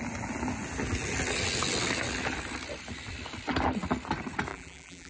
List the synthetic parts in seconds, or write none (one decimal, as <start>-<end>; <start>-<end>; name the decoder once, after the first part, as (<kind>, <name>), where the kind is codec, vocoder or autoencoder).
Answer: 4.5-5.1 (vocoder, BigVGAN v2)